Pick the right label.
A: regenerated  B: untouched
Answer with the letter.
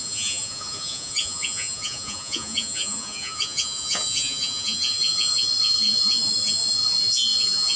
A